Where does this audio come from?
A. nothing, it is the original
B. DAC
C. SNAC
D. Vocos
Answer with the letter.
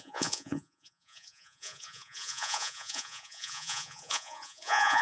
D